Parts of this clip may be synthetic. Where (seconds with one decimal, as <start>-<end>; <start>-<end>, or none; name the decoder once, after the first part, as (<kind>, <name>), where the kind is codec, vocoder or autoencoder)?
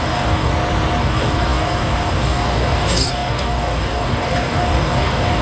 0.0-0.5 (codec, DAC); 1.0-5.4